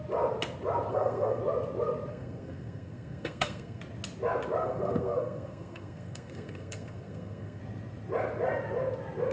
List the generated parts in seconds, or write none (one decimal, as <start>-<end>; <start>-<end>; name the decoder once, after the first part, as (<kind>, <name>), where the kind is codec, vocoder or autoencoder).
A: 0.9-1.4 (codec, SNAC); 2.1-3.8; 4.6-7.6